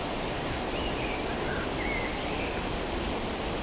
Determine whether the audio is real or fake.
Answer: real